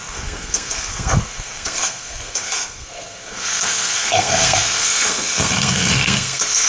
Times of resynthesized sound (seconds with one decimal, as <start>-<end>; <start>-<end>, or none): 0.0-6.7